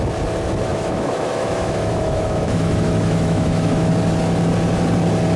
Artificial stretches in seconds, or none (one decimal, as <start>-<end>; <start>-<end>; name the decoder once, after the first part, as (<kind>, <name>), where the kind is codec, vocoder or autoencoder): 0.7-3.9 (autoencoder, DAC-VAE)